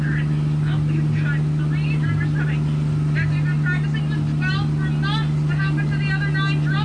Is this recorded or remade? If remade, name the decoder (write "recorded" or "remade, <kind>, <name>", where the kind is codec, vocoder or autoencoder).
recorded